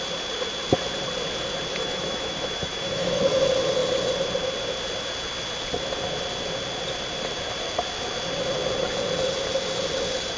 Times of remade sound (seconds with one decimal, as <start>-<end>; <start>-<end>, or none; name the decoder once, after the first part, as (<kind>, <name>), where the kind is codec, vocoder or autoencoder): 1.7-3.2 (autoencoder, DAC-VAE)